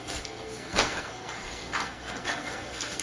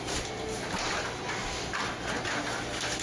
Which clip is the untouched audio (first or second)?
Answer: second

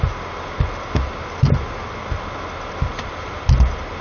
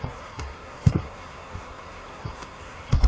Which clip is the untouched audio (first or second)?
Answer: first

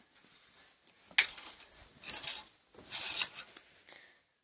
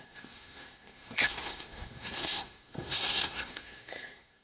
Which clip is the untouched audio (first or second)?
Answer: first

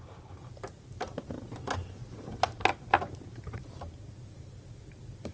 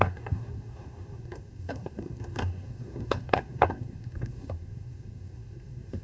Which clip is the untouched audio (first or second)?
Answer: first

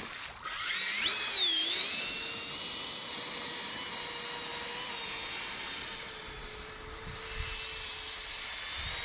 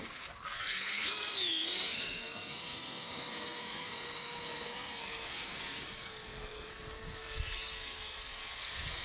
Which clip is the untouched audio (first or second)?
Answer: first